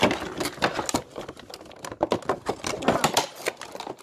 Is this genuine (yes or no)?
yes